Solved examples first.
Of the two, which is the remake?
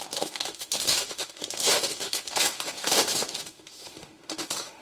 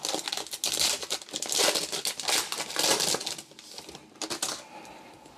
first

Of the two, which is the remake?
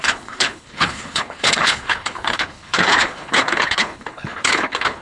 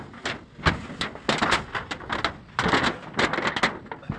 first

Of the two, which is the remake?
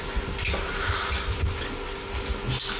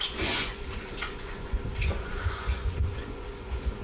second